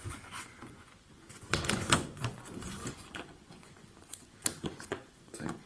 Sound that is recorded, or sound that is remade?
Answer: remade